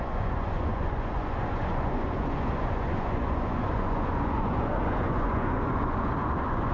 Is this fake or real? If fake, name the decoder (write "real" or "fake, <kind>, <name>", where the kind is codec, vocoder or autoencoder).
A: fake, vocoder, Vocos